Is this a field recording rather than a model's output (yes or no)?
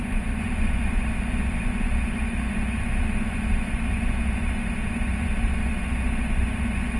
no